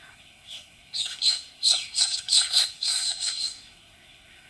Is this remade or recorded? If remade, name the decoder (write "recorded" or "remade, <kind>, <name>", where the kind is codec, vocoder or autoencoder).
remade, codec, SNAC